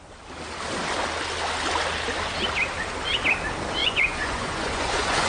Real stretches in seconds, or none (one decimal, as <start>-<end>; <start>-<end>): 0.0-3.8